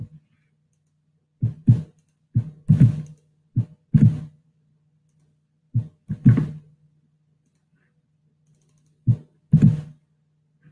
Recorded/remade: recorded